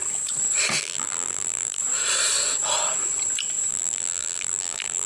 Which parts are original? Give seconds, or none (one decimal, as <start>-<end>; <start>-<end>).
0.0-0.8; 1.8-3.7